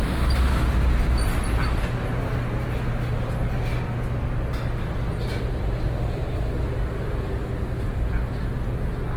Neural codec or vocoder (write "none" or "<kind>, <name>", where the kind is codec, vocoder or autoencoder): none